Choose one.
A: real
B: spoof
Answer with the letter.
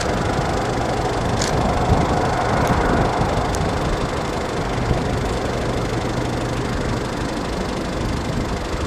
A